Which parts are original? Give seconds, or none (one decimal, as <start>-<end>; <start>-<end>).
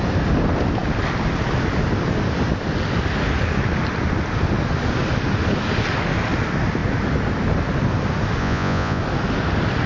0.0-8.4; 9.0-9.9